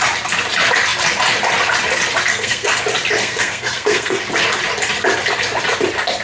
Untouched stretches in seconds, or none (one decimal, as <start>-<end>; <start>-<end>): 0.0-2.3; 2.8-3.2; 4.2-6.2